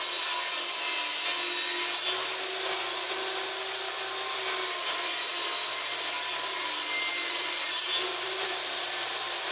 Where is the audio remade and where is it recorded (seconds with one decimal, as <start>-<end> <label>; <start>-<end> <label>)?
0.0-4.8 recorded; 4.8-5.3 remade; 5.3-7.1 recorded; 7.1-9.5 remade